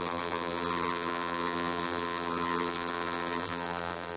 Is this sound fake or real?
fake